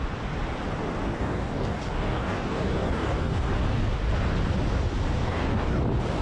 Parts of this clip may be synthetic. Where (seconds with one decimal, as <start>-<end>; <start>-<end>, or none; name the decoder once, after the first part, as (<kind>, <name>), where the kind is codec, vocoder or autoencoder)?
1.1-3.5 (codec, DAC); 5.2-5.8